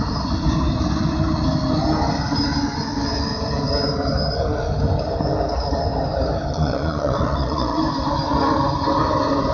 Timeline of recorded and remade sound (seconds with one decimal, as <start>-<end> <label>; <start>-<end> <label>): 0.0-6.5 recorded; 6.5-7.8 remade; 7.8-9.5 recorded